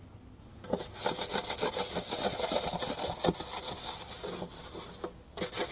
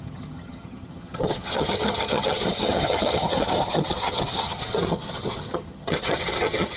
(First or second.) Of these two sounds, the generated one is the second